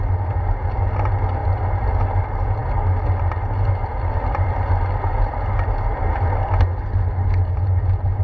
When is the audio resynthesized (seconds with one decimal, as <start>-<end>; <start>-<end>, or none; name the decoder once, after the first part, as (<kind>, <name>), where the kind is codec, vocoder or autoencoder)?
1.4-1.9 (vocoder, BigVGAN v2); 3.9-5.4

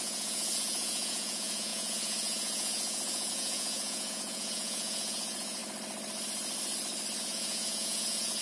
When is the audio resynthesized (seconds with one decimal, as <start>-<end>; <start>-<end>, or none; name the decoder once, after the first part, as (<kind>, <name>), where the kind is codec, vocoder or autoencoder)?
0.0-5.6 (vocoder, Vocos); 7.2-8.4

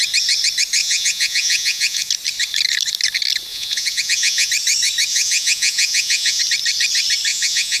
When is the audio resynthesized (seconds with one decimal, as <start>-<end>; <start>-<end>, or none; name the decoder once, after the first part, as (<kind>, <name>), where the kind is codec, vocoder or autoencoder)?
0.8-2.1 (vocoder, Vocos); 3.5-4.5; 5.1-6.4; 7.3-7.8

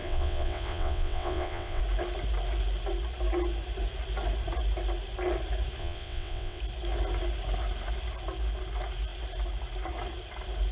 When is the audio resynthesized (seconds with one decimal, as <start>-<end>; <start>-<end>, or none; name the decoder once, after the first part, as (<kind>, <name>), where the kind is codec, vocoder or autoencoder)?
0.0-1.8 (vocoder, WaveNeXt); 5.8-6.6

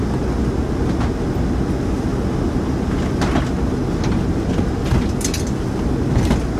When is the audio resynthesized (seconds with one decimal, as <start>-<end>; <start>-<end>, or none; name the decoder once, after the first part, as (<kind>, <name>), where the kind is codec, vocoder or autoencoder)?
none